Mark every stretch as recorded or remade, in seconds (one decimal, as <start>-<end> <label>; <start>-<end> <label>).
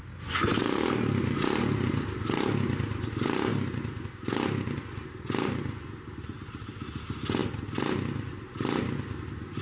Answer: 0.0-9.6 recorded